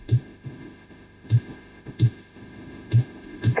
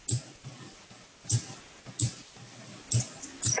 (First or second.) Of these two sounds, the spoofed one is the first